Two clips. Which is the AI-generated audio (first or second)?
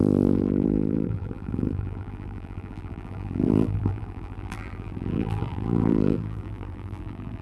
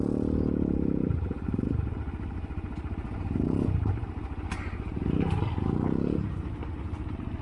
first